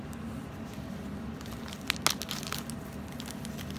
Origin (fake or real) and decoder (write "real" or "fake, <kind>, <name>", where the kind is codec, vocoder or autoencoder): real